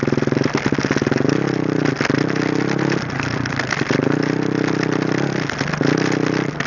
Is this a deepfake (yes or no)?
no